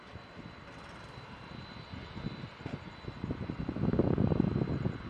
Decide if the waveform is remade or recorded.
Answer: recorded